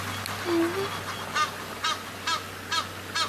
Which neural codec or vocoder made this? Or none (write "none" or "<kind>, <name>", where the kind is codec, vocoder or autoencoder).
none